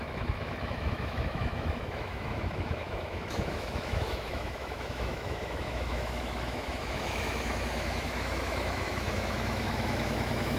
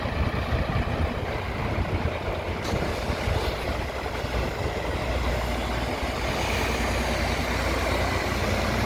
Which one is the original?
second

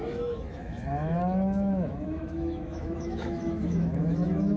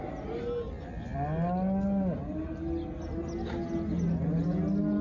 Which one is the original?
second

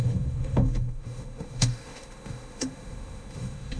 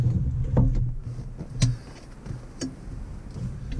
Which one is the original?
second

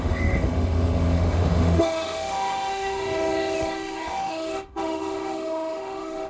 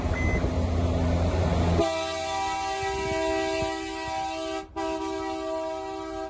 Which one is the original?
second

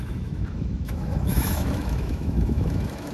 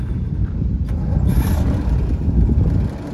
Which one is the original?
second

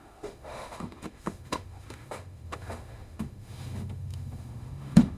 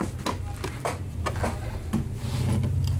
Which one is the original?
second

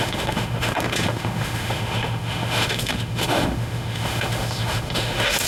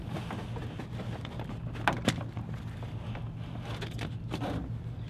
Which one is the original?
second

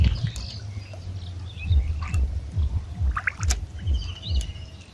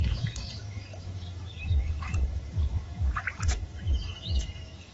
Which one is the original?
first